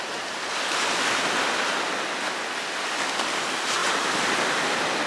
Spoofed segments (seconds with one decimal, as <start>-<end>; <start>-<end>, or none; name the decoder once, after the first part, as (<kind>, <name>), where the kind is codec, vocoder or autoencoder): none